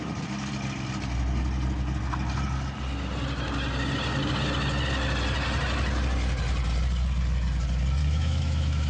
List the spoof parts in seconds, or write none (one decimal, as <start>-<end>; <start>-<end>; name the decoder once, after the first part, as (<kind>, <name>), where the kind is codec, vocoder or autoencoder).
8.0-8.9 (autoencoder, DAC-VAE)